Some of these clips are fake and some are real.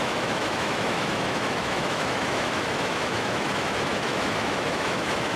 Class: fake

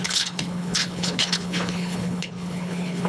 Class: fake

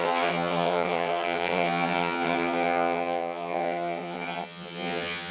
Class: fake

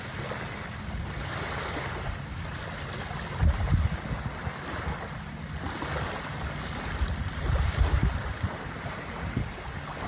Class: real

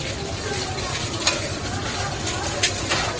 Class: real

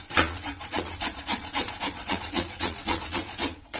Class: fake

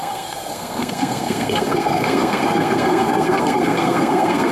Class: fake